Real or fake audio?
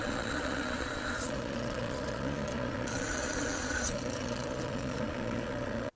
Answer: fake